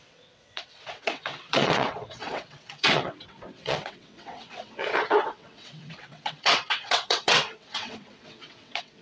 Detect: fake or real fake